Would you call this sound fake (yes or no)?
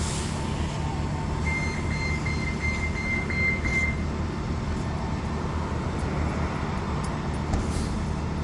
no